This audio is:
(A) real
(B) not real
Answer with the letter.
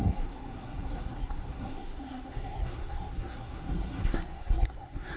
B